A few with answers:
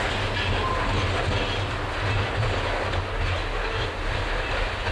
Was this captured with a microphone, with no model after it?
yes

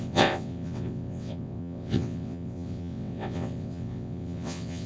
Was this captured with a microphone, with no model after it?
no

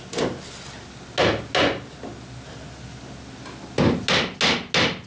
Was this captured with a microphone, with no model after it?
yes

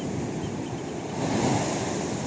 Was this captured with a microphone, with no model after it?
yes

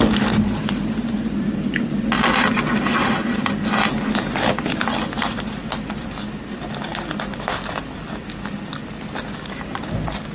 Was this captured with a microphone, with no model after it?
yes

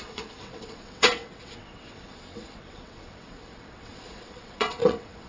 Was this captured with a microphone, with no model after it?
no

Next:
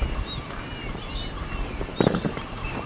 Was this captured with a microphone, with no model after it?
yes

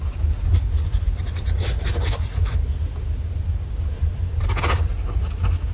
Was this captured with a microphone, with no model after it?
yes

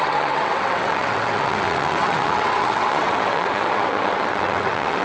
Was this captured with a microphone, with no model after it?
no